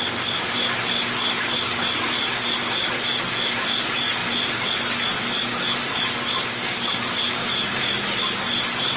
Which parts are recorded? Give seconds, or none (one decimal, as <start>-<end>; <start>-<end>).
0.0-9.0